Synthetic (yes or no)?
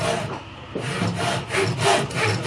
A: no